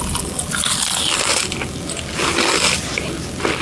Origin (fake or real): real